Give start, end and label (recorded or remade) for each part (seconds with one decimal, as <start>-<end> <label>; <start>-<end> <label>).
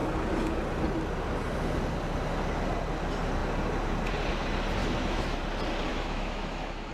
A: 0.0-4.8 recorded; 4.8-5.4 remade; 5.4-5.9 recorded; 5.9-6.9 remade